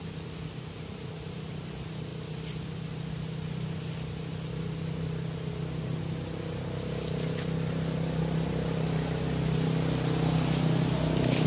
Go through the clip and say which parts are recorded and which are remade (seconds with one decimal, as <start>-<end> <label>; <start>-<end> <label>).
0.0-11.5 recorded